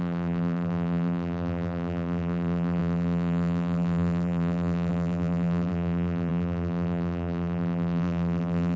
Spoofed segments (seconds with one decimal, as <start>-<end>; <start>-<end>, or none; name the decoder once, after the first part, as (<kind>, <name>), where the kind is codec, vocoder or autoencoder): 0.0-8.8 (vocoder, BigVGAN v2)